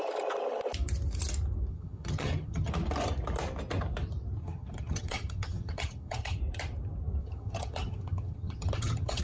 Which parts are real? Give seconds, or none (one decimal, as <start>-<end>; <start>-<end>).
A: 0.0-1.7; 2.7-4.4; 6.4-7.2